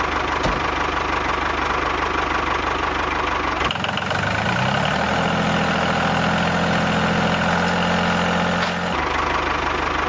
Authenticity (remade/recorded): recorded